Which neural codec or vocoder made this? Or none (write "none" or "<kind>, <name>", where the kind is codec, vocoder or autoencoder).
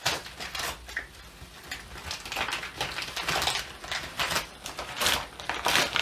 none